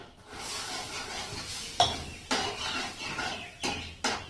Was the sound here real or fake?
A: real